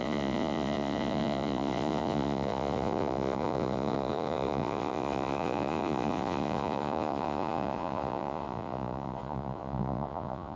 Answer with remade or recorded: remade